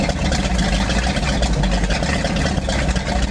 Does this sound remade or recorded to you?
recorded